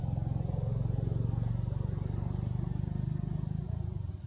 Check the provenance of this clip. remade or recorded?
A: recorded